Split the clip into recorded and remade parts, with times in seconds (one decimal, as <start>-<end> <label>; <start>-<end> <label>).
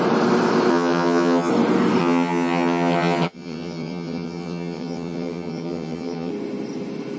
0.0-0.7 recorded; 0.7-1.5 remade; 1.5-2.0 recorded; 2.0-6.3 remade; 6.3-7.2 recorded